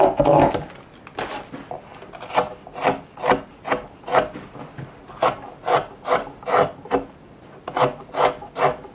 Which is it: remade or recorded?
recorded